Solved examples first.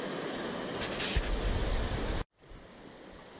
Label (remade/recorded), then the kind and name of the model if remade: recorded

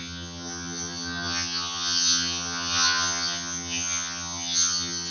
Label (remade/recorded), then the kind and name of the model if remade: remade, vocoder, HiFi-GAN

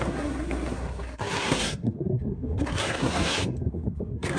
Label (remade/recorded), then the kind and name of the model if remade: remade, codec, SNAC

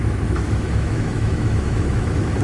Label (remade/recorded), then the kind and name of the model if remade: remade, autoencoder, DAC-VAE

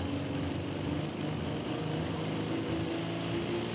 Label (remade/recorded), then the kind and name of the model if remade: recorded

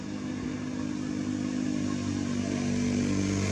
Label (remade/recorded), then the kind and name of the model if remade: recorded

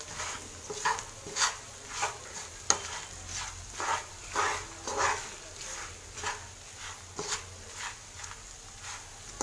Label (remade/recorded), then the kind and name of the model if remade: recorded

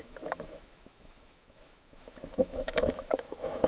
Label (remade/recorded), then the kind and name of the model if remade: remade, autoencoder, DAC-VAE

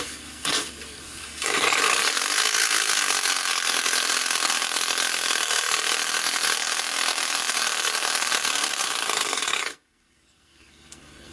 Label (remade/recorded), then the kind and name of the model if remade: remade, codec, SNAC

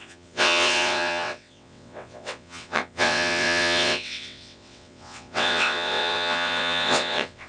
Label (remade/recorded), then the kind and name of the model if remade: remade, vocoder, WaveNeXt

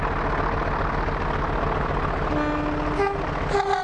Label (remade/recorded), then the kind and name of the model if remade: recorded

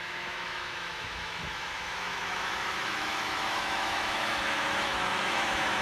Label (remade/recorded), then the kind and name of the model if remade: remade, autoencoder, DAC-VAE